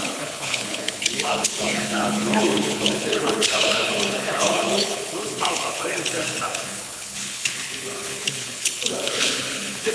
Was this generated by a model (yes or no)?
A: yes